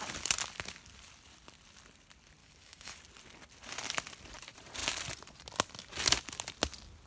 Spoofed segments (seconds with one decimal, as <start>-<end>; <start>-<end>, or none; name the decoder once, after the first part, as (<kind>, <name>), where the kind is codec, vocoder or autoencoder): 2.4-3.0 (codec, DAC)